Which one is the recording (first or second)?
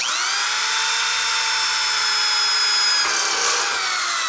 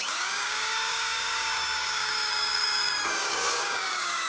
first